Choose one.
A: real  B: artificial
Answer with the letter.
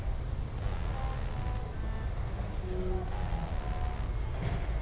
A